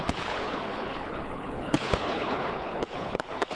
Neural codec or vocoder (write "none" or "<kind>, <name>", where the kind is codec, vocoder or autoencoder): codec, HILCodec